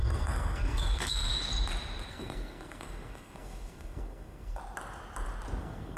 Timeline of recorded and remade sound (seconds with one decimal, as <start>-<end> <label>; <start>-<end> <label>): 0.0-1.3 remade; 1.3-2.1 recorded; 2.1-4.6 remade; 4.6-5.6 recorded; 5.6-6.0 remade